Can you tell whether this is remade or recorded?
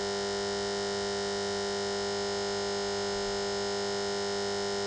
recorded